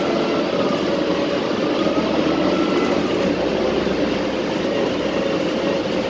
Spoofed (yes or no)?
no